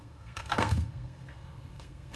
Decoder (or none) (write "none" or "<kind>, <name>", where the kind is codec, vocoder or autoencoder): codec, SNAC